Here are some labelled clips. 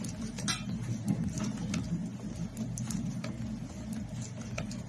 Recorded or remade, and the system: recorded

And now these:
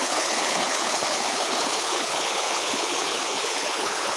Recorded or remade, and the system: remade, codec, HILCodec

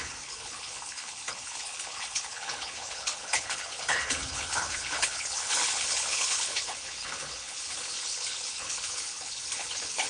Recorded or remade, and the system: remade, codec, HILCodec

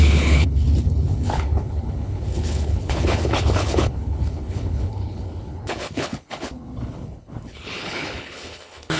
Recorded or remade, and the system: remade, codec, HILCodec